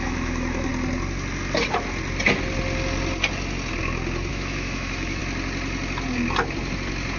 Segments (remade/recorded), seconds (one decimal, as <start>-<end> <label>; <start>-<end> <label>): 0.0-0.7 remade; 0.7-4.3 recorded; 4.3-5.2 remade; 5.2-7.2 recorded